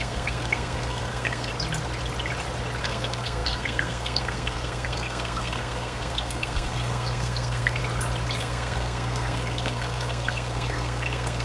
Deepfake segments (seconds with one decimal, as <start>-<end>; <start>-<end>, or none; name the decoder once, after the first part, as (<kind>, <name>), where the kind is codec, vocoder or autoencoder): 0.0-1.5 (codec, SNAC); 2.8-7.8; 8.4-11.4